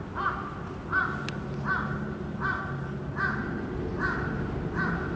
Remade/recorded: recorded